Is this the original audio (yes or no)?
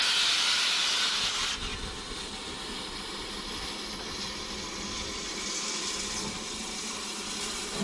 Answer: yes